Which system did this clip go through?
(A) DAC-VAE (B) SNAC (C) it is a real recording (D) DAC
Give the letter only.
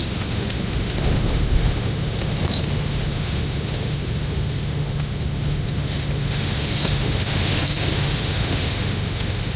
A